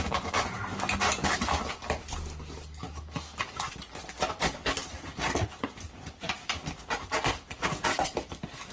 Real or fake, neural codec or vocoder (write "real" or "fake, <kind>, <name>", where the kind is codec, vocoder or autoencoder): real